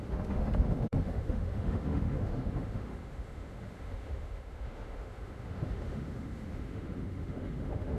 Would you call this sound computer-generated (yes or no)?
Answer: yes